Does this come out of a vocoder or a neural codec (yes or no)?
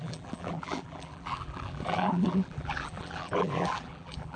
yes